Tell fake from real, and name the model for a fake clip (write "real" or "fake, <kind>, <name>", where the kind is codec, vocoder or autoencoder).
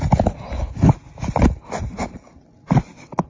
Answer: real